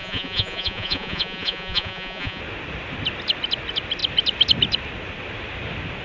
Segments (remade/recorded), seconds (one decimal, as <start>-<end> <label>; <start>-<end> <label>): 0.0-2.4 remade; 2.4-6.0 recorded